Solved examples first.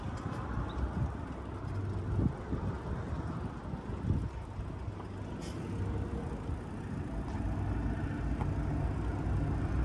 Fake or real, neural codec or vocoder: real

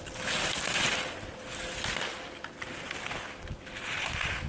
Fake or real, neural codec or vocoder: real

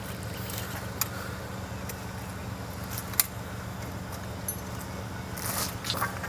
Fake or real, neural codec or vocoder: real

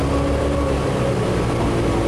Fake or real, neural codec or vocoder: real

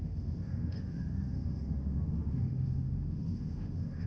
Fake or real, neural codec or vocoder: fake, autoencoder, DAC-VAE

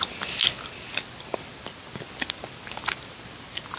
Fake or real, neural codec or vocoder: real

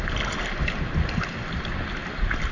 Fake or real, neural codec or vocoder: real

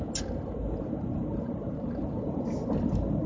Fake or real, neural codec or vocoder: real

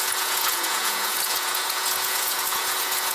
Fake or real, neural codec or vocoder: fake, vocoder, Vocos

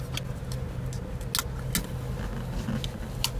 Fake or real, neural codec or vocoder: real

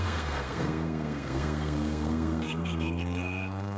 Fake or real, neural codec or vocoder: fake, codec, SNAC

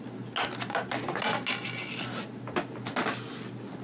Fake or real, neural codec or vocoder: real